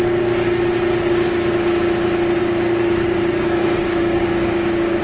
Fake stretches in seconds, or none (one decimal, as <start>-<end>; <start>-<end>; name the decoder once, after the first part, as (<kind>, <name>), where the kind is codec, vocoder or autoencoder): 2.4-5.0 (codec, DAC)

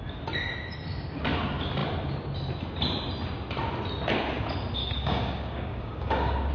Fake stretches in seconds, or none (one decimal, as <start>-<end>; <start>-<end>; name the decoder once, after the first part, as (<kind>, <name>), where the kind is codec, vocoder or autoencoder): 4.8-6.5 (codec, DAC)